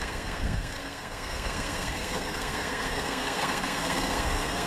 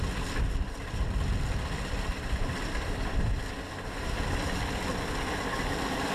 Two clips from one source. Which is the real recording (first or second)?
second